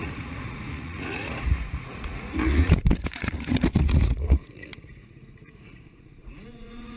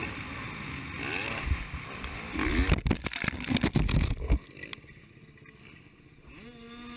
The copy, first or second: first